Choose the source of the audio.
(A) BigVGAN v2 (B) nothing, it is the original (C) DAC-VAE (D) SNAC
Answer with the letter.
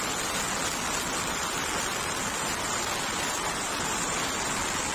B